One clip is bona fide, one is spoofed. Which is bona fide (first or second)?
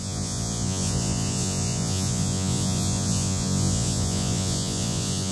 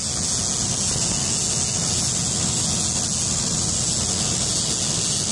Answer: second